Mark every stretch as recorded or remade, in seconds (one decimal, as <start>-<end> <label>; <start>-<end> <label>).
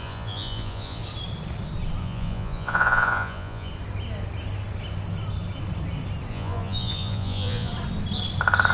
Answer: 0.0-1.0 remade; 1.0-2.0 recorded; 2.0-3.7 remade; 3.7-6.3 recorded; 6.3-7.7 remade; 7.7-8.7 recorded